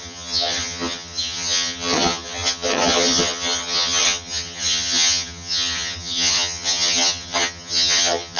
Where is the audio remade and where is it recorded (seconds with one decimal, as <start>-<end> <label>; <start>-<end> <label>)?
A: 0.0-8.4 remade